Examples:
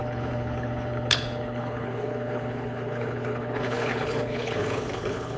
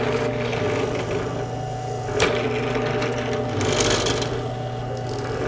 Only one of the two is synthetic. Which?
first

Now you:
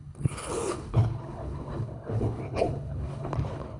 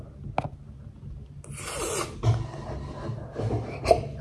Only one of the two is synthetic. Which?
first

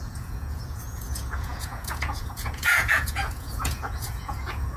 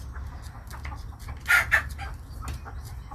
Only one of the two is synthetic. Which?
first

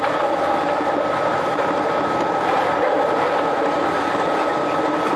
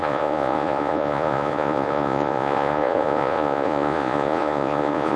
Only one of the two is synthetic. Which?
second